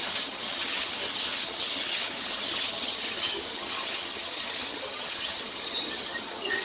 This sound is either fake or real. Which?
fake